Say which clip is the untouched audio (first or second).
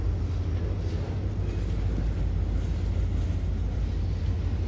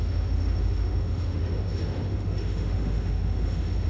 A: first